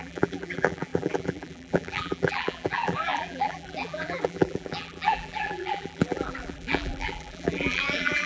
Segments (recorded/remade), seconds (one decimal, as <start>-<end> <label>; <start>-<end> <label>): 0.0-8.3 remade